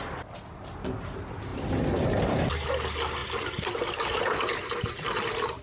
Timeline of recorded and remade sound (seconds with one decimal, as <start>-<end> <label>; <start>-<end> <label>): 0.0-5.6 recorded